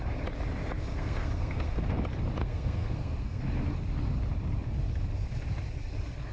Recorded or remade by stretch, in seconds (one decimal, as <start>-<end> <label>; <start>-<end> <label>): 0.0-0.9 recorded; 0.9-1.9 remade; 1.9-2.4 recorded; 2.4-3.4 remade; 3.4-6.3 recorded